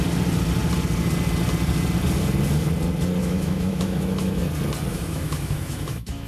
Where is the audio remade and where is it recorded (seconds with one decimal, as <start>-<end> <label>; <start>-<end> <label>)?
0.0-3.2 recorded; 3.2-4.4 remade; 4.4-4.9 recorded; 4.9-6.3 remade